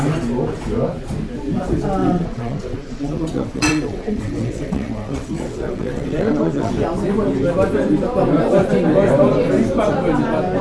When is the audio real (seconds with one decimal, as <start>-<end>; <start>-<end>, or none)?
0.0-2.0; 6.7-10.6